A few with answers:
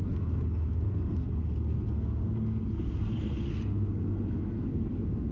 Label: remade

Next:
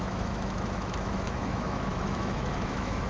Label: remade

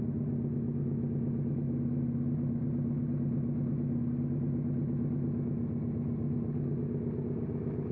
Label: recorded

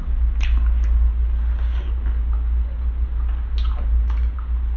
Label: recorded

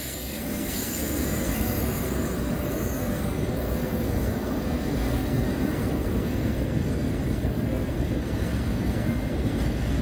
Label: remade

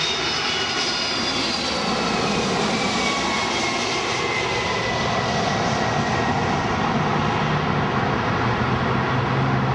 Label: recorded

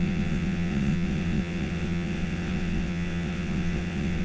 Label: remade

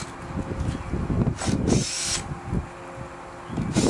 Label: recorded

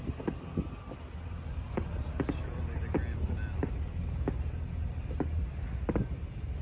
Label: recorded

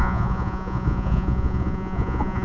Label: remade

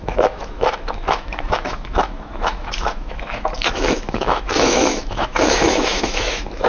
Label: remade